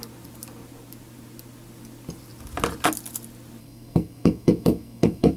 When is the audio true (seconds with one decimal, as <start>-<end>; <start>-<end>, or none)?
0.0-3.6

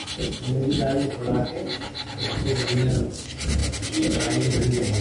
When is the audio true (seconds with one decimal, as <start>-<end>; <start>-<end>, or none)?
0.0-5.0

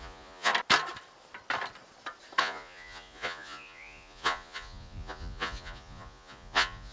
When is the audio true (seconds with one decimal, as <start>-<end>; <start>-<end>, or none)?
0.5-2.4

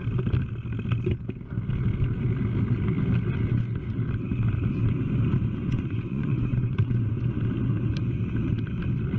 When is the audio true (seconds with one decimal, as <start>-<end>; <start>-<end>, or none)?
0.0-5.6; 7.1-9.2

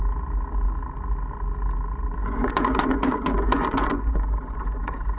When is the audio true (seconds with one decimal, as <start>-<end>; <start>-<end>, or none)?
0.0-2.2

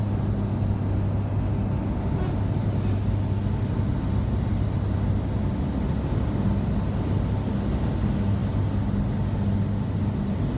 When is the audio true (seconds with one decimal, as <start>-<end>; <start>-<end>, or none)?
0.0-10.6

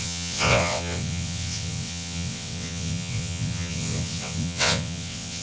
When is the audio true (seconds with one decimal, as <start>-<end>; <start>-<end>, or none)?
none